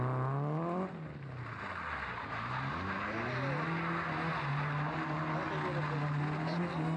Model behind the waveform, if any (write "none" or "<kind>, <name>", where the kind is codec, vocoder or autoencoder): none